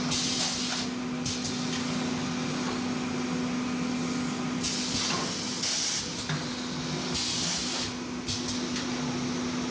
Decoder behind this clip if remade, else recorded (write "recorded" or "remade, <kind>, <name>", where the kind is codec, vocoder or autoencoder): recorded